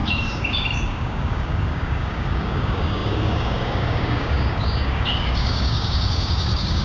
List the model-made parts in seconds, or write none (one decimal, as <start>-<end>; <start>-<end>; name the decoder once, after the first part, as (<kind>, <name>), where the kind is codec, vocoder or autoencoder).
0.0-6.8 (codec, DAC)